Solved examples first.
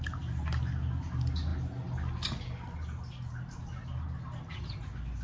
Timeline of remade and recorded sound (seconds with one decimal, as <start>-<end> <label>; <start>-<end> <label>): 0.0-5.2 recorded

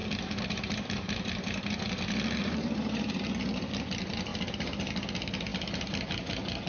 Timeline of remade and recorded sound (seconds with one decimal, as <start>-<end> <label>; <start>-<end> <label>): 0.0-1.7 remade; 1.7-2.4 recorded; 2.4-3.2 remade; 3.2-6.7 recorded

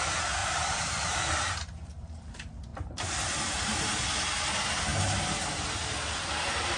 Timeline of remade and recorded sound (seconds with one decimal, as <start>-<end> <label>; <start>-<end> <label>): 0.0-0.4 recorded; 0.4-2.3 remade; 2.3-6.8 recorded

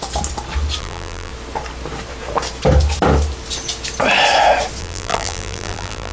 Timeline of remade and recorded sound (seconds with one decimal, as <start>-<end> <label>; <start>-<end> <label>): 0.0-0.8 recorded; 0.8-1.3 remade; 1.3-4.8 recorded; 4.8-6.1 remade

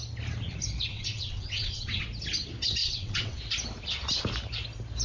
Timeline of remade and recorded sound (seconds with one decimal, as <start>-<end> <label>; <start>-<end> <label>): 0.0-0.9 recorded; 0.9-2.0 remade; 2.0-2.8 recorded; 2.8-3.4 remade; 3.4-5.0 recorded